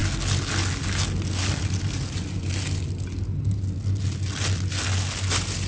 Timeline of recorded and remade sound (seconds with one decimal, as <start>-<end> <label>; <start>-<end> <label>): 0.0-5.7 recorded